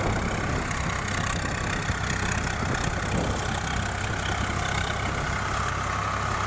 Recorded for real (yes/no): yes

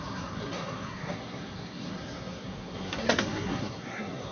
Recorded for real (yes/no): no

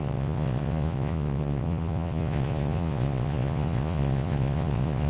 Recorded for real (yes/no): no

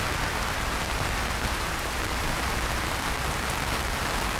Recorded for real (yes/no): yes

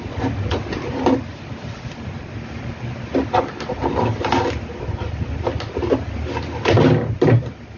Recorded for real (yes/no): yes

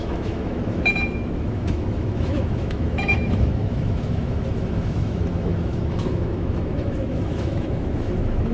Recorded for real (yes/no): no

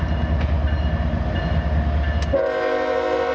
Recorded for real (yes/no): yes